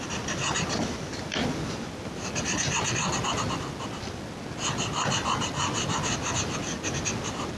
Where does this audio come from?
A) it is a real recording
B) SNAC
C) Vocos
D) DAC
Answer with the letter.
A